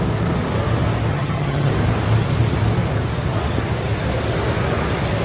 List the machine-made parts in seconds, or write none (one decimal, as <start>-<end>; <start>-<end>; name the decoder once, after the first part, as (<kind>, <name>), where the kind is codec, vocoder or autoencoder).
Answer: 1.1-1.7 (vocoder, HiFi-GAN)